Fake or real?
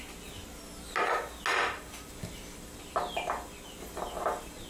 real